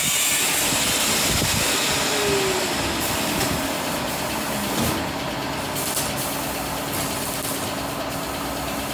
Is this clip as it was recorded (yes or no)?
yes